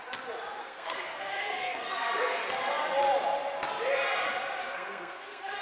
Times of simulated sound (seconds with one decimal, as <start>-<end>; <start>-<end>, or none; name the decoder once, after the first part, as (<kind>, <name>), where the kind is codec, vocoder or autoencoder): 0.6-2.4 (codec, SNAC); 4.6-5.6